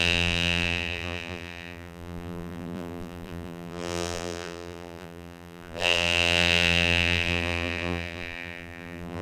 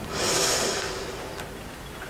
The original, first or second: second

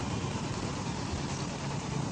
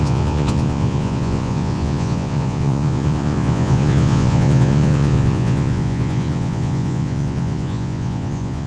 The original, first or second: first